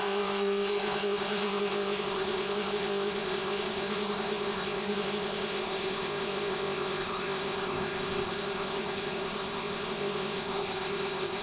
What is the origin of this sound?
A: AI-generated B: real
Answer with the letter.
A